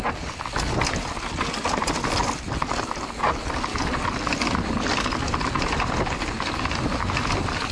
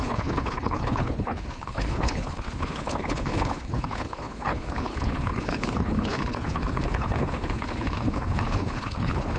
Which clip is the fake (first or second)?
second